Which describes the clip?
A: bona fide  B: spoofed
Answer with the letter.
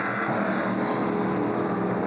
A